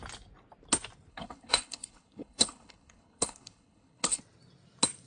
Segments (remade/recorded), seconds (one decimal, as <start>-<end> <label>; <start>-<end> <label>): 0.0-1.1 recorded; 1.1-4.2 remade; 4.2-5.1 recorded